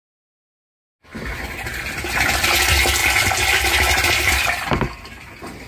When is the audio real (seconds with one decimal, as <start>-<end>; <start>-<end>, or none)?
0.0-3.0; 4.7-5.7